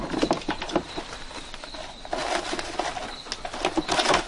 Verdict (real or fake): real